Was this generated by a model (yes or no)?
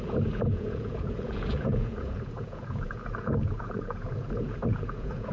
yes